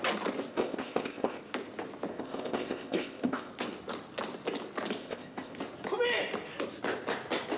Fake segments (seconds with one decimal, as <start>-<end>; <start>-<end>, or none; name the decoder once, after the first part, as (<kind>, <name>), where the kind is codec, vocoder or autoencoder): 0.5-1.4 (codec, ZipCodec); 2.1-3.5; 5.0-5.6